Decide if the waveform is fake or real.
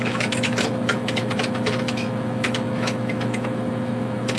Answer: fake